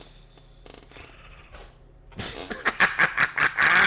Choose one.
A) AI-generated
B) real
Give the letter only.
B